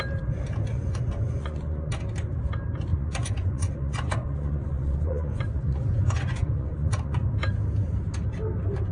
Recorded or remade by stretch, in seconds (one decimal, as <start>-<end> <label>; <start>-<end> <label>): 0.0-0.7 recorded; 0.7-1.9 remade; 1.9-2.9 recorded; 2.9-7.3 remade; 7.3-8.9 recorded